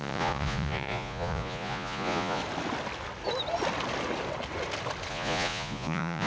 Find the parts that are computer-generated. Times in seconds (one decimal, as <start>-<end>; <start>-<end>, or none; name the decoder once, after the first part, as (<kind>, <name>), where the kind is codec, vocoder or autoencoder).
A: 0.0-2.4 (vocoder, Vocos); 5.1-6.3